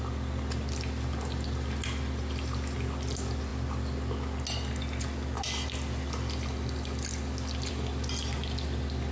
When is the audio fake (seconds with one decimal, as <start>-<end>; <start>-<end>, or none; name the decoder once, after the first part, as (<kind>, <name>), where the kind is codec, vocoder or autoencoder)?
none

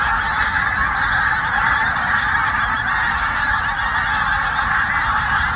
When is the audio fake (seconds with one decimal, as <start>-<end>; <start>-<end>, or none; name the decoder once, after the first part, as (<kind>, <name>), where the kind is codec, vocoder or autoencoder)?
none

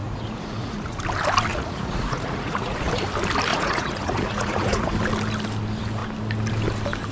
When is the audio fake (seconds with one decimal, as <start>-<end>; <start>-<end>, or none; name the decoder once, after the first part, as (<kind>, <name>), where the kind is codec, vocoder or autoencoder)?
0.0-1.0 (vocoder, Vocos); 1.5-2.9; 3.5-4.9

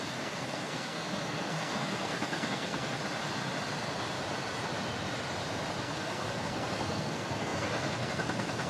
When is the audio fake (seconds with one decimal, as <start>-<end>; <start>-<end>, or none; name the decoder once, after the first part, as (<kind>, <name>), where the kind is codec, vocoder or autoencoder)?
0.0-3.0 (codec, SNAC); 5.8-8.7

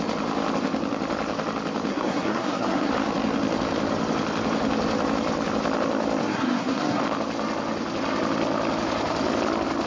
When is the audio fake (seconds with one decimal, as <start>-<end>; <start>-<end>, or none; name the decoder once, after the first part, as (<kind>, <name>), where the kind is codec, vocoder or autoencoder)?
1.9-2.9 (codec, SNAC); 6.2-7.0

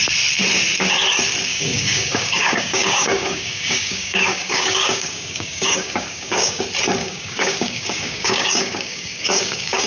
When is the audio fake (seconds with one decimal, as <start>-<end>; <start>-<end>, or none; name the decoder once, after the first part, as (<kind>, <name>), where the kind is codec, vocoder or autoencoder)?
1.5-6.6 (codec, DAC); 7.0-9.9

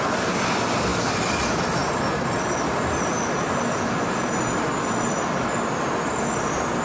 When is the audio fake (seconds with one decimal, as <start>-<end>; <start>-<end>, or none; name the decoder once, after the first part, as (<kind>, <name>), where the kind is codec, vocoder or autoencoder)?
none